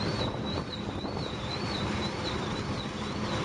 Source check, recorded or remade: recorded